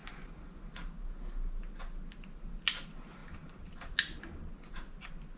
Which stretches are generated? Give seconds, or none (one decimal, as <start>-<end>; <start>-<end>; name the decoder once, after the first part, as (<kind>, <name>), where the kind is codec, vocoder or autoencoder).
none